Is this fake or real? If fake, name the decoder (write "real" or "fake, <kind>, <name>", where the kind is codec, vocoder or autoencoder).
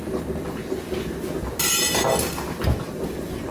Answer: real